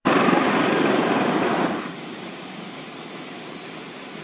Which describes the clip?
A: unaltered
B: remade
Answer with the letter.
B